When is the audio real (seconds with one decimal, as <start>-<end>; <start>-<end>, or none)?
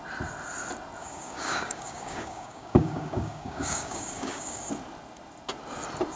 0.0-1.0; 4.7-6.2